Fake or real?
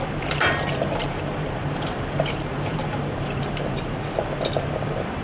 fake